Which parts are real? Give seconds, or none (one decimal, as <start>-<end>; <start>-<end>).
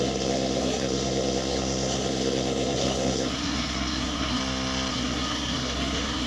4.4-4.9